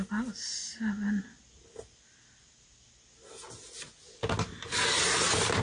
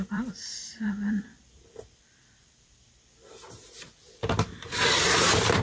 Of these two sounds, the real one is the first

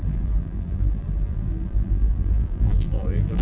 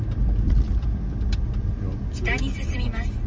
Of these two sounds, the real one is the second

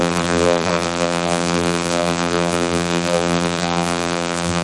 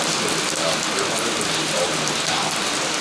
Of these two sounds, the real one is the second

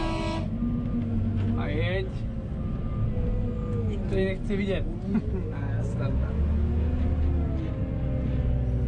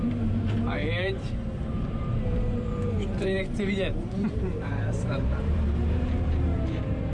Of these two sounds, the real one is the first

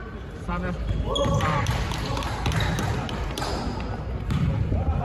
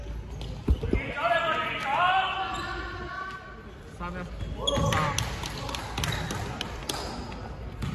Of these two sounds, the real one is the second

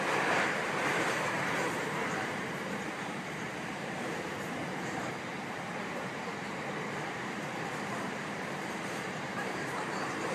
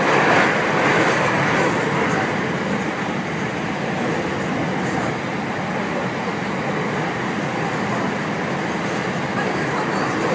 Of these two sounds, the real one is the second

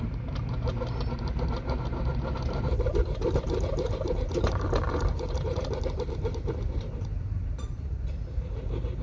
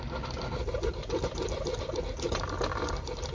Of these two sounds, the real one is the second